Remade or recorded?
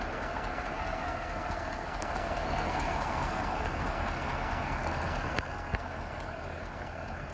remade